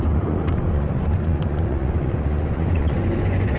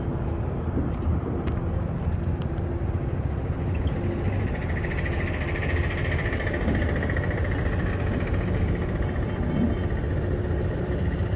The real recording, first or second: second